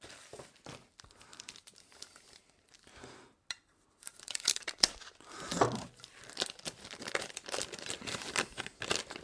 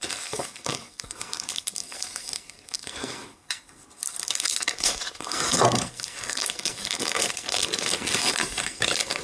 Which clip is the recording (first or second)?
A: first